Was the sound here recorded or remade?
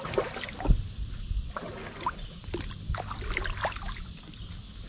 recorded